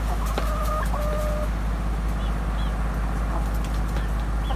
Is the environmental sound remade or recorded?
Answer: recorded